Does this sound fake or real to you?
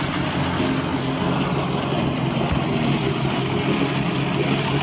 real